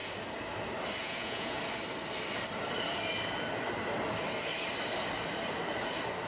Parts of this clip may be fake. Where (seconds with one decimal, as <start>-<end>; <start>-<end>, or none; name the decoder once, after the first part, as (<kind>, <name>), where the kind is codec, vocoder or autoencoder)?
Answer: 1.0-1.6 (vocoder, Vocos)